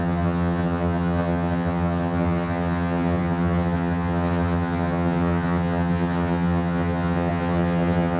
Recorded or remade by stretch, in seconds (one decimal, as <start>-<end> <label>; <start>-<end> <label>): 0.0-8.2 remade